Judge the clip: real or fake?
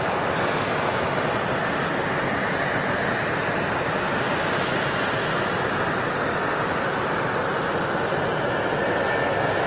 real